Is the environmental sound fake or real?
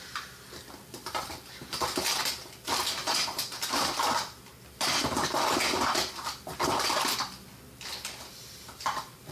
real